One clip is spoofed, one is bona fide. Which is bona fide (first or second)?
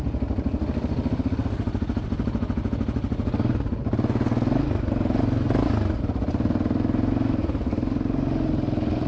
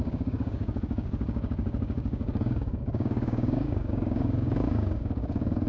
first